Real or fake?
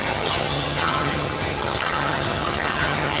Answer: fake